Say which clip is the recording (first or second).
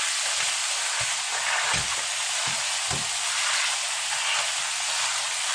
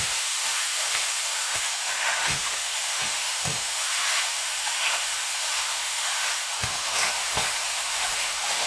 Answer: first